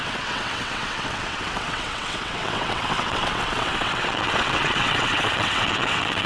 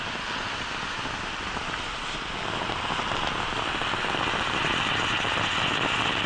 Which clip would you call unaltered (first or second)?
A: second